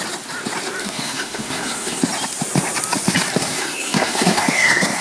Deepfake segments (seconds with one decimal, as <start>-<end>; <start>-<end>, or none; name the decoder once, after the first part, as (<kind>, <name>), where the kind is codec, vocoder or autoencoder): 0.8-2.0 (codec, SNAC); 3.4-5.0